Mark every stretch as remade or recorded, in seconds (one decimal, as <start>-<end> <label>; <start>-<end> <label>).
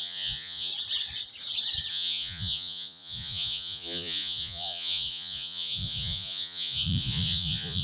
0.0-0.7 remade; 0.7-1.9 recorded; 1.9-7.8 remade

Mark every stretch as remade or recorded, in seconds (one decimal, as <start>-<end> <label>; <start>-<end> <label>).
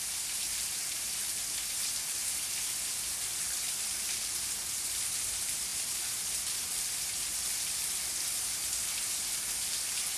0.0-10.2 recorded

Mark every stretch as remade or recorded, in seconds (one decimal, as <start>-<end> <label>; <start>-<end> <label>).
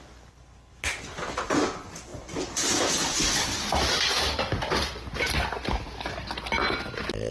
0.0-7.3 recorded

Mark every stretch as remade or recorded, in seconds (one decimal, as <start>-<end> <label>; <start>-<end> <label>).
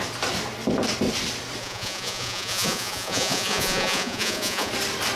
0.0-1.6 recorded; 1.6-4.7 remade; 4.7-5.2 recorded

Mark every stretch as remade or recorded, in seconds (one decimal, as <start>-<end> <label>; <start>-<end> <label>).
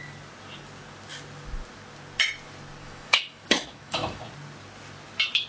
0.0-2.8 recorded; 2.8-4.2 remade; 4.2-5.5 recorded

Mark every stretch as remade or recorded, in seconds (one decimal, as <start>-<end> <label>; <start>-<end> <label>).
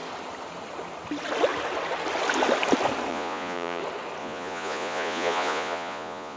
0.0-3.1 recorded; 3.1-3.8 remade; 3.8-4.2 recorded; 4.2-6.4 remade